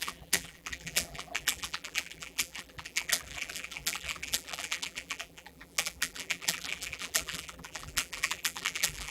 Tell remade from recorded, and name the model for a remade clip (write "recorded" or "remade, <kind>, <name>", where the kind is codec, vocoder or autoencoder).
remade, vocoder, BigVGAN v2